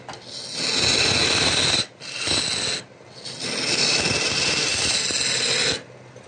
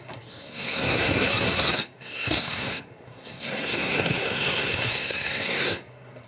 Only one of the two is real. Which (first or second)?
first